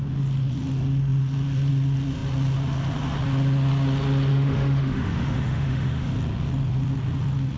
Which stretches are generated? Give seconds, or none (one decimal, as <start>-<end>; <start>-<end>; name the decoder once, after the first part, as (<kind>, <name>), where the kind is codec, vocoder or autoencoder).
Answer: 4.3-6.1 (autoencoder, DAC-VAE)